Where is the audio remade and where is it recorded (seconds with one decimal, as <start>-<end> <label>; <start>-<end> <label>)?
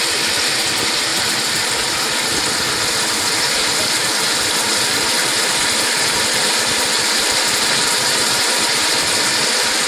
0.0-1.1 remade; 1.1-2.7 recorded; 2.7-9.9 remade